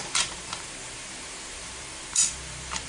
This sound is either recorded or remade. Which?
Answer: remade